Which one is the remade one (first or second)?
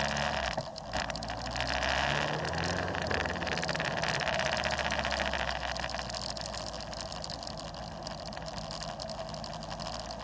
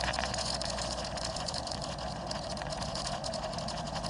second